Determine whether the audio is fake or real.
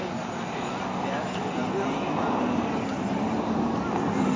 real